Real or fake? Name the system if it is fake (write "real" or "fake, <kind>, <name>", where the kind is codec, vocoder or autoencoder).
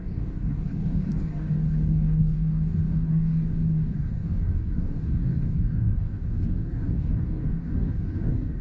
fake, codec, DAC